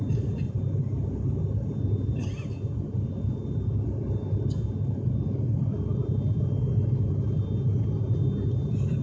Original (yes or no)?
yes